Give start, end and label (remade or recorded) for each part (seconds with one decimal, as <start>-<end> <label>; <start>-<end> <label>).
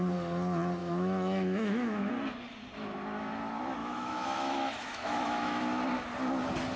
0.0-0.8 recorded; 0.8-2.1 remade; 2.1-3.8 recorded; 3.8-5.6 remade; 5.6-6.8 recorded